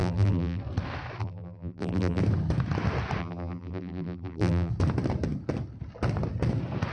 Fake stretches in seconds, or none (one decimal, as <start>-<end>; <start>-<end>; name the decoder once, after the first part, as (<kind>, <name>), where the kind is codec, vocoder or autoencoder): 0.0-0.6 (vocoder, BigVGAN v2); 1.2-2.2; 3.2-4.7